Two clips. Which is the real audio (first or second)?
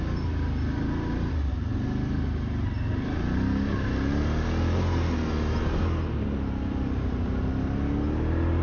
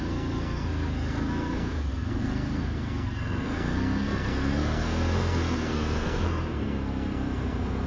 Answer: first